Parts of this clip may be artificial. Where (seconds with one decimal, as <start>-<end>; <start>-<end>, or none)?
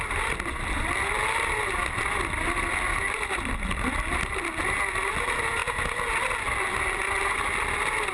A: none